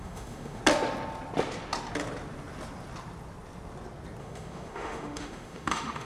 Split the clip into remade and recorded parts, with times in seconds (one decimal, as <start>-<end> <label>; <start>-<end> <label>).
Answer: 0.0-0.6 remade; 0.6-4.2 recorded; 4.2-6.0 remade